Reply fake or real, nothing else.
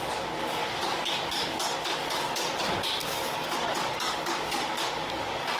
fake